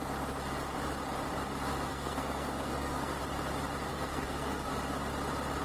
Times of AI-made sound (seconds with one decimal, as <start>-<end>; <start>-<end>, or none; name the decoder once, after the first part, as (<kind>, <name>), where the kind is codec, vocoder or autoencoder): 1.9-3.2 (codec, SNAC); 3.9-4.7